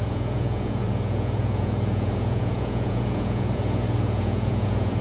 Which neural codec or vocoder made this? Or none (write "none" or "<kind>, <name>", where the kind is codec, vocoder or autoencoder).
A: vocoder, Vocos